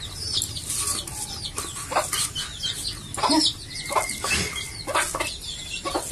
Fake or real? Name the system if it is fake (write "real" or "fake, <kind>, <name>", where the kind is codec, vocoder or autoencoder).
real